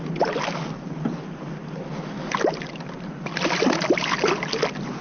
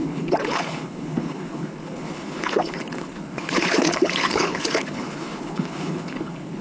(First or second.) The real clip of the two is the first